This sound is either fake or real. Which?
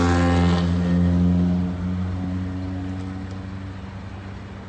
real